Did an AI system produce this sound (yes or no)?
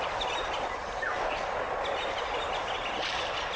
no